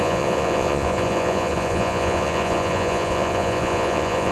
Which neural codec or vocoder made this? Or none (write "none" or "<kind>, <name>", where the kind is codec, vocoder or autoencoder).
vocoder, Vocos